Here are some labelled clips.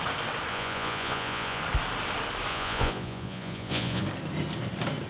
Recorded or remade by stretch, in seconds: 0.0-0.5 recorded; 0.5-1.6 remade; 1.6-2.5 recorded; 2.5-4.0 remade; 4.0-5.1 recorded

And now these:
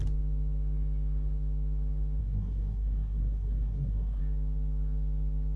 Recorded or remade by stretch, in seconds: 0.0-2.2 recorded; 2.2-4.2 remade; 4.2-5.6 recorded

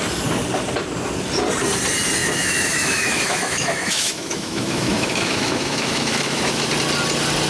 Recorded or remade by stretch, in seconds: 0.0-2.2 recorded; 2.2-6.7 remade; 6.7-7.5 recorded